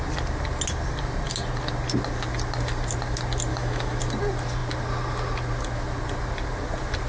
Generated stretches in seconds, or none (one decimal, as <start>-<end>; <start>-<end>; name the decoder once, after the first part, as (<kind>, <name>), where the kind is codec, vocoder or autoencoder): 3.5-4.0 (autoencoder, DAC-VAE)

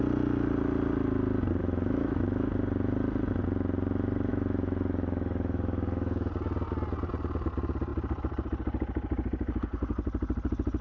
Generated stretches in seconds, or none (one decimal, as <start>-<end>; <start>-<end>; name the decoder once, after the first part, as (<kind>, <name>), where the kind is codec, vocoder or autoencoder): 1.6-2.5 (autoencoder, DAC-VAE); 4.3-6.3

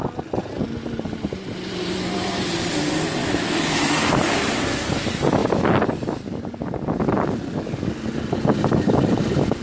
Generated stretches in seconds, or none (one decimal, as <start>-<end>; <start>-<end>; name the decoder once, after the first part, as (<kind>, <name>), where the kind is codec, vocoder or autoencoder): 3.2-4.1 (autoencoder, DAC-VAE)

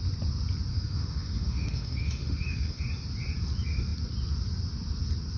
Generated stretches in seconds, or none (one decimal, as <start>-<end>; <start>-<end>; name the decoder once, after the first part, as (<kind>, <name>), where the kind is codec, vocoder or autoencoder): 0.7-2.8 (autoencoder, DAC-VAE)

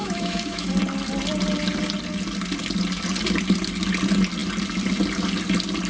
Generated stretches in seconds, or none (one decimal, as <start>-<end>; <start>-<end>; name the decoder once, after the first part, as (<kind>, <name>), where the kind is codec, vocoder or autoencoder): 0.0-0.7 (autoencoder, DAC-VAE)

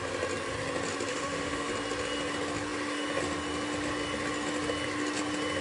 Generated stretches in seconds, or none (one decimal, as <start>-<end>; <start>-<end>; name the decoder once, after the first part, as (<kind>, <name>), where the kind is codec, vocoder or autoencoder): 1.1-1.7 (autoencoder, DAC-VAE)